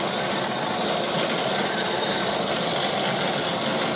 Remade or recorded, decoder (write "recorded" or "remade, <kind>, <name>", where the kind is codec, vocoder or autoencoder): recorded